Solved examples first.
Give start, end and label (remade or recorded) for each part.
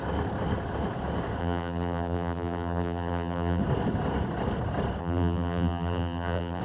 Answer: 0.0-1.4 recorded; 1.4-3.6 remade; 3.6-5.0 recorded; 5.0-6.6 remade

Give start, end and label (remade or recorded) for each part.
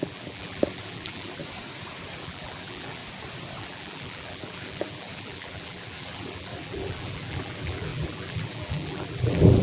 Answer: 0.0-1.4 remade; 1.4-2.2 recorded; 2.2-3.0 remade; 3.0-3.6 recorded; 3.6-9.6 remade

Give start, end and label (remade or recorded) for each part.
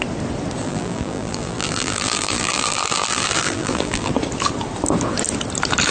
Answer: 0.0-0.6 recorded; 0.6-4.1 remade; 4.1-5.9 recorded